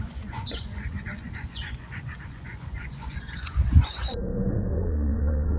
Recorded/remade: remade